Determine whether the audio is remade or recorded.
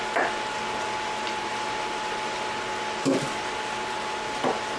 remade